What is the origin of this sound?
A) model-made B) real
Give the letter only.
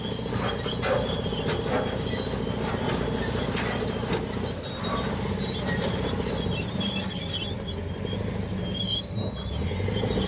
B